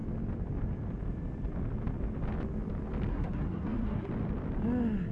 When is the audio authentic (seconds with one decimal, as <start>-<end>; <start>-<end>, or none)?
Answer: 0.0-3.1; 4.1-5.1